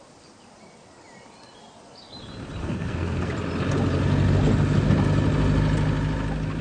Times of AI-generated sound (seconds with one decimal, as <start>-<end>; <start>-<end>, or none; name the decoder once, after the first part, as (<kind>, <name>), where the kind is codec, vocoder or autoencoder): 2.6-3.3 (codec, SNAC)